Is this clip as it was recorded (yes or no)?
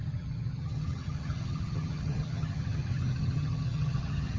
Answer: no